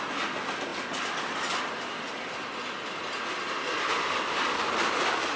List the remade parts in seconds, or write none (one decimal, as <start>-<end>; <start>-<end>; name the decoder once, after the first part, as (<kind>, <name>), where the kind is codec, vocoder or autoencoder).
none